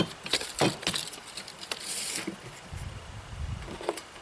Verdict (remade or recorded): recorded